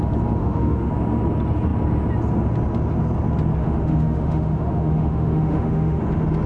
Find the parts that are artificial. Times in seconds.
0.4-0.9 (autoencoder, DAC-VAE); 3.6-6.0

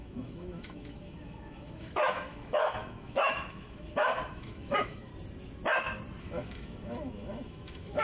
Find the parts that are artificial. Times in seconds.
0.0-5.1 (autoencoder, DAC-VAE); 6.2-8.0

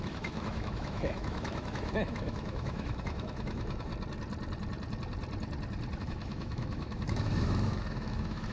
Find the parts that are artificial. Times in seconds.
0.0-3.9 (autoencoder, DAC-VAE); 6.0-8.5

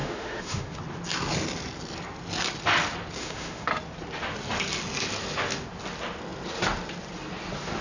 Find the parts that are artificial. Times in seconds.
0.0-0.8 (autoencoder, DAC-VAE); 3.2-3.7

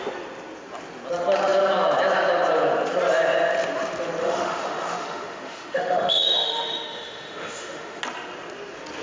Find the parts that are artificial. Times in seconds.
4.2-8.0 (autoencoder, DAC-VAE)